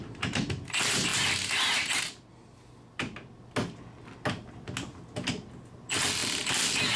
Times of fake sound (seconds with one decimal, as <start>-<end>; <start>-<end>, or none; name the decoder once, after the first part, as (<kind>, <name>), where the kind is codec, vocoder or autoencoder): none